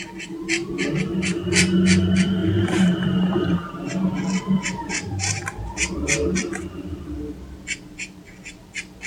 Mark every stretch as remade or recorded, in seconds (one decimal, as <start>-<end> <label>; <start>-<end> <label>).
0.0-2.4 recorded; 2.4-3.7 remade; 3.7-4.6 recorded; 4.6-5.9 remade; 5.9-9.1 recorded